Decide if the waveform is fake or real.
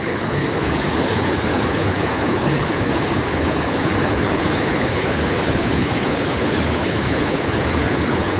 fake